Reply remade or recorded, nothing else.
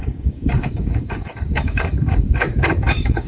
remade